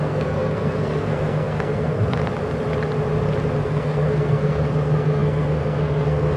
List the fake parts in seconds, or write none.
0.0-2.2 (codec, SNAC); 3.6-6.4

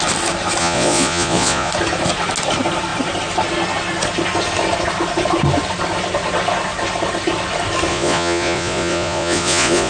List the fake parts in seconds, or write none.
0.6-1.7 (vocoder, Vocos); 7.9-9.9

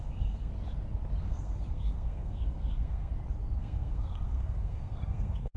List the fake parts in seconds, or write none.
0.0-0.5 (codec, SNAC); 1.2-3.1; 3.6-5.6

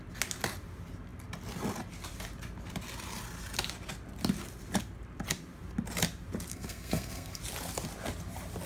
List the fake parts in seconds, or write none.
6.5-7.4 (codec, SNAC)

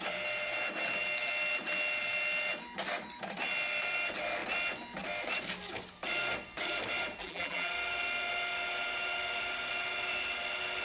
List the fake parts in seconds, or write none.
7.2-7.7 (vocoder, BigVGAN v2)